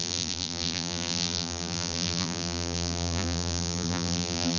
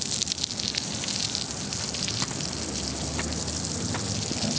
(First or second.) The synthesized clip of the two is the first